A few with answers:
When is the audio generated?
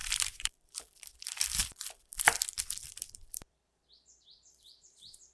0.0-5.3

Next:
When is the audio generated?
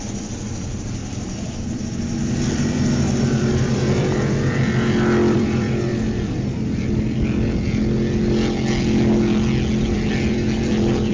0.0-5.9; 9.8-11.1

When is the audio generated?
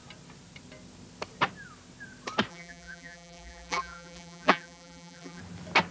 2.5-5.4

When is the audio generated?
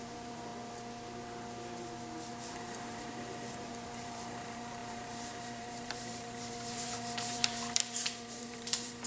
0.0-0.5; 2.3-9.1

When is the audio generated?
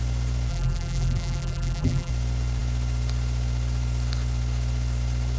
0.5-2.1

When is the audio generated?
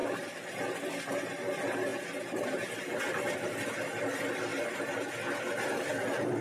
none